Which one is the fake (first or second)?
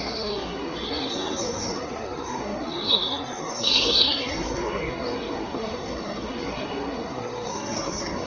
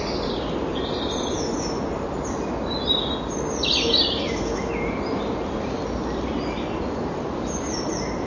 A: first